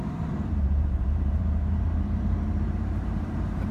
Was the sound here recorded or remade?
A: remade